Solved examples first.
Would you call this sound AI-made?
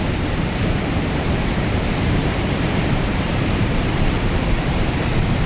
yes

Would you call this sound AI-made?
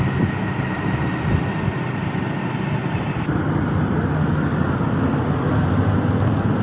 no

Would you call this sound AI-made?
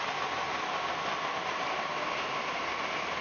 no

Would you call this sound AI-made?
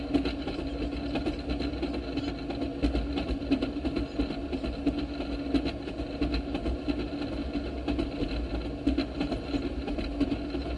no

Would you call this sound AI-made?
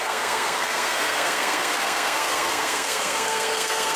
yes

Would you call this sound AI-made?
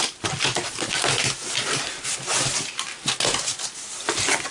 no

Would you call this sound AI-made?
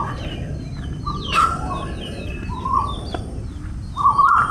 no